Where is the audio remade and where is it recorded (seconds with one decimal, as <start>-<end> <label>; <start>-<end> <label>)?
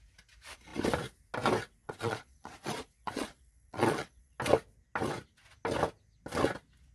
0.0-1.8 recorded; 1.8-4.4 remade; 4.4-6.9 recorded